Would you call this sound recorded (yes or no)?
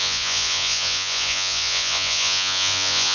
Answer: no